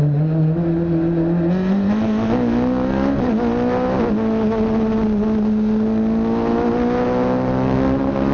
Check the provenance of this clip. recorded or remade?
recorded